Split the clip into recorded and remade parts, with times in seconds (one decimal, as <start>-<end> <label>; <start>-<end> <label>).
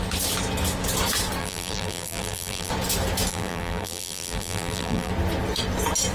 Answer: 0.0-1.4 recorded; 1.4-2.7 remade; 2.7-3.3 recorded; 3.3-5.1 remade; 5.1-6.1 recorded